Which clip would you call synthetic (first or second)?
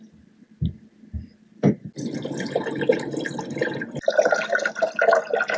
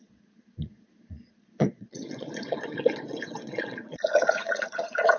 second